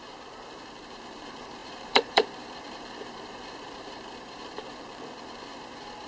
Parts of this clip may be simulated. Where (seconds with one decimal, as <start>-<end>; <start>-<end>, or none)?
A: 0.0-6.1

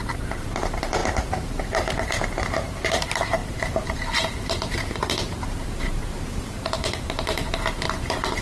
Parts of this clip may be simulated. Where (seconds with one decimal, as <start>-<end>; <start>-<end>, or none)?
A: 0.0-8.4